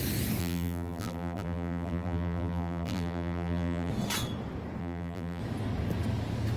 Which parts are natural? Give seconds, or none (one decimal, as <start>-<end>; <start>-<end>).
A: 0.0-0.4; 3.9-4.8; 5.4-6.6